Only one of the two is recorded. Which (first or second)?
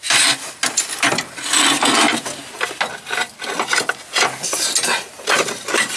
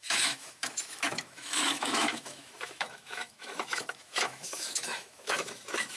first